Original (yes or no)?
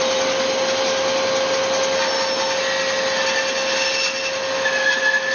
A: yes